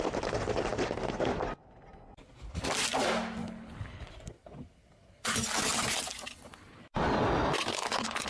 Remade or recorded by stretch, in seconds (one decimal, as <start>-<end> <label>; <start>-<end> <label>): 0.0-3.4 recorded; 3.4-4.1 remade; 4.1-8.3 recorded